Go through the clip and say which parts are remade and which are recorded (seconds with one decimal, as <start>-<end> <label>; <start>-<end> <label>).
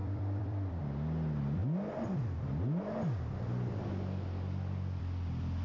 0.0-1.6 remade; 1.6-5.0 recorded; 5.0-5.6 remade